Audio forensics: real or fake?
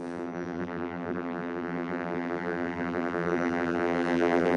fake